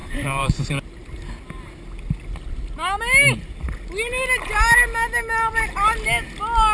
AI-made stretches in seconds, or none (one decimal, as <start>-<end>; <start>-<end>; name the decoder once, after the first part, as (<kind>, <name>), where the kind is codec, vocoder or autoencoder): 0.0-0.7 (vocoder, BigVGAN v2)